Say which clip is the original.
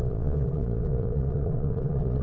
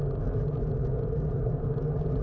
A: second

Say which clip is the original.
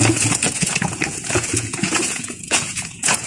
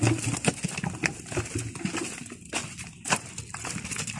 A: second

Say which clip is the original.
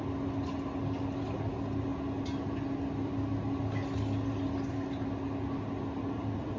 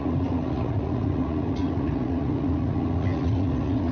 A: first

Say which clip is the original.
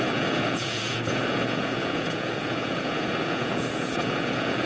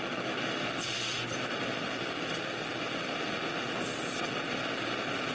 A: second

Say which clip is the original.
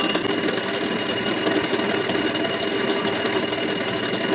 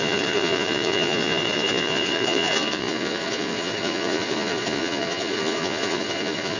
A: first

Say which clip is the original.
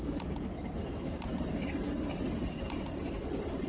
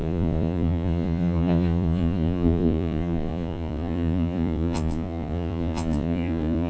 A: first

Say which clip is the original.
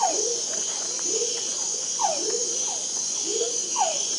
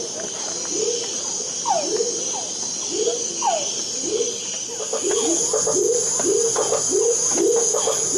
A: second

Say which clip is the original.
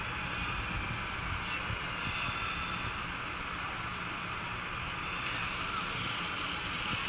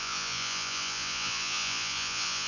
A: first